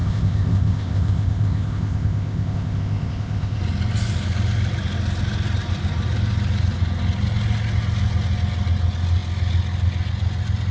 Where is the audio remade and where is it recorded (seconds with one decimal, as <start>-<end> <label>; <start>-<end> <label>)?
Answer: 0.0-3.6 remade; 3.6-10.7 recorded